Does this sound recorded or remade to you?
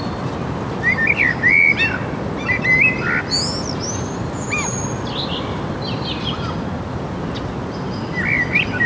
recorded